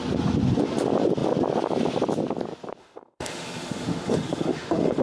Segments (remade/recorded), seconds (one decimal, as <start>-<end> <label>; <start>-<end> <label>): 0.0-2.8 recorded; 2.8-5.0 remade